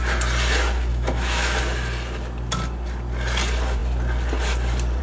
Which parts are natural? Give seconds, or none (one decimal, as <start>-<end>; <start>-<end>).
0.0-0.9; 1.6-5.0